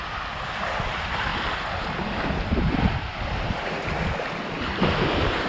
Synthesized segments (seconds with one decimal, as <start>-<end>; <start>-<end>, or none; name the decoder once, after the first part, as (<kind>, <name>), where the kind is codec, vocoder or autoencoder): none